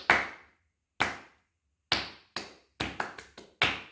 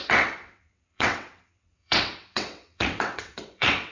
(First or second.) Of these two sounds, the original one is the first